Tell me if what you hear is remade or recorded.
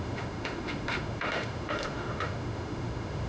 remade